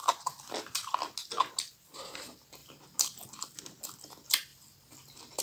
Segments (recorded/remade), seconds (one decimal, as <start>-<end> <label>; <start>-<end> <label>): 0.0-5.4 recorded